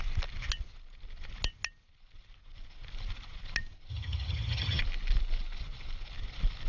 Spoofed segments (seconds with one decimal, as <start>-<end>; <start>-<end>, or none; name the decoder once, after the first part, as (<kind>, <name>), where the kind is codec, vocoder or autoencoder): 3.9-4.8 (vocoder, HiFi-GAN)